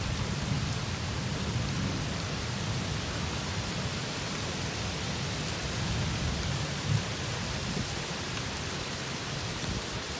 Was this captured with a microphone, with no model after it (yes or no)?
yes